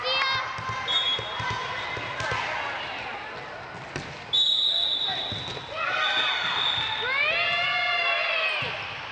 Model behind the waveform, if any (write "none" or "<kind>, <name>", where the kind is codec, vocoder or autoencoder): none